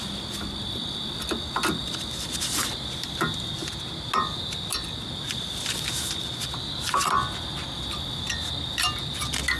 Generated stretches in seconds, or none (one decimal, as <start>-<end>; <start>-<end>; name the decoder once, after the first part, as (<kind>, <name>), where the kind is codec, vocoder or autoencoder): none